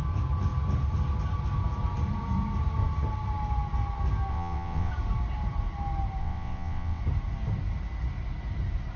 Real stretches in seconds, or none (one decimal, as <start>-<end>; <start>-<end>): 0.0-4.3; 4.9-6.2; 7.0-9.0